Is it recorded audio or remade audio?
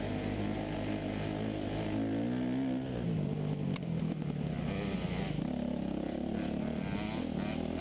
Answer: recorded